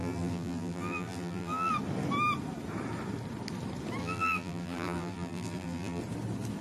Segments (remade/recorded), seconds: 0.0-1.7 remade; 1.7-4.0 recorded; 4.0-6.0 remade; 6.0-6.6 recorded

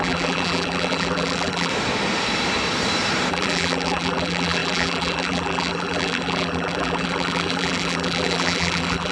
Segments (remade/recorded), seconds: 0.0-1.7 remade; 1.7-3.3 recorded; 3.3-9.1 remade

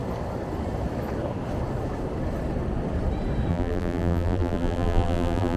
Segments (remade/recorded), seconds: 0.0-3.5 recorded; 3.5-5.6 remade

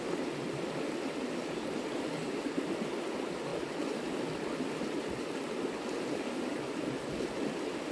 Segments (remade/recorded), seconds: 0.0-3.5 recorded; 3.5-5.0 remade; 5.0-7.9 recorded

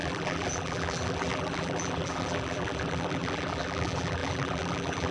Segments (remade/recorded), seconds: 0.0-5.1 remade

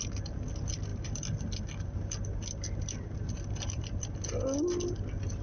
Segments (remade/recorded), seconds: 0.0-0.9 recorded; 0.9-4.1 remade; 4.1-5.4 recorded

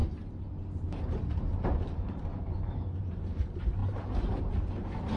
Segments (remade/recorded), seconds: 0.0-5.2 remade